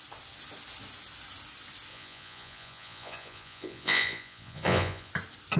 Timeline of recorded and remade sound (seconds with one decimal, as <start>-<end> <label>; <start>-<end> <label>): 0.0-1.9 recorded; 1.9-5.1 remade; 5.1-5.6 recorded